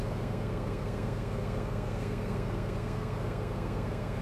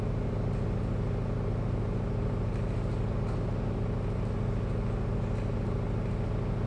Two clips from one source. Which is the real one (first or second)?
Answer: second